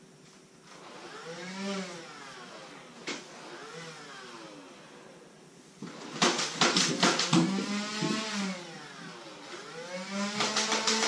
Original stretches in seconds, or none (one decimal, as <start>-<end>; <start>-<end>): 0.0-11.1